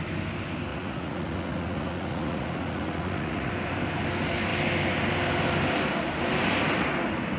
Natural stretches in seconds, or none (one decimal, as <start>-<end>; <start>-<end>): 0.0-0.7; 3.5-7.4

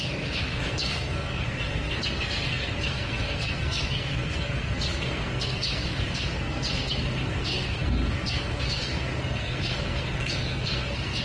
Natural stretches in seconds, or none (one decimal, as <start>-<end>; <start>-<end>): none

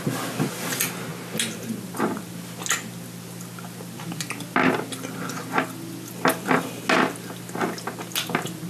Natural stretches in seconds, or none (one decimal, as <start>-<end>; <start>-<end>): 0.0-8.7

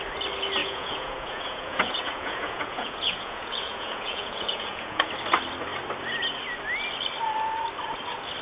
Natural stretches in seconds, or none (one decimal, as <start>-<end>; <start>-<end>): 0.0-0.6; 5.1-8.4

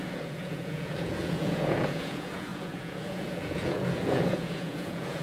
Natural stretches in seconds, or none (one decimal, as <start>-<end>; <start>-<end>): none

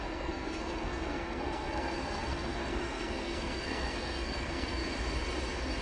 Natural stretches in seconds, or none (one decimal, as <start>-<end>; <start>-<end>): 4.8-5.8

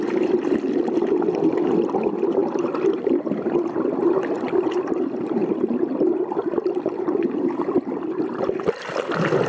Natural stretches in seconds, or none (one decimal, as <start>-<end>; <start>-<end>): 0.0-9.5